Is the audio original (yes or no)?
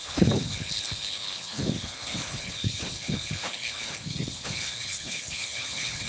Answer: no